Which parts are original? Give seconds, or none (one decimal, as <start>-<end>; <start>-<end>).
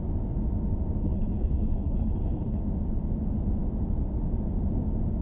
0.0-1.0; 2.6-5.2